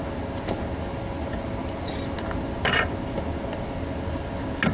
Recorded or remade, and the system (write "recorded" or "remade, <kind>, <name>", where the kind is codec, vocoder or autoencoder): recorded